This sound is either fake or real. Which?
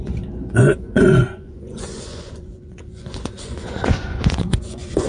fake